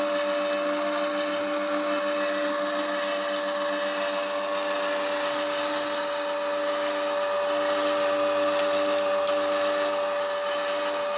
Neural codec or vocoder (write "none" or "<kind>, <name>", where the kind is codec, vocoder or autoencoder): none